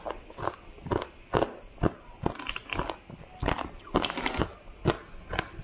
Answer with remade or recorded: recorded